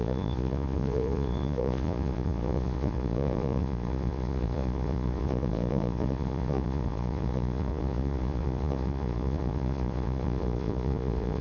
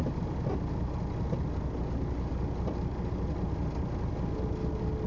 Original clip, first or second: second